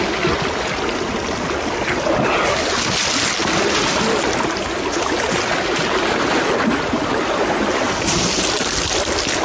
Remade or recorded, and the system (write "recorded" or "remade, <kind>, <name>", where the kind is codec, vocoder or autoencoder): recorded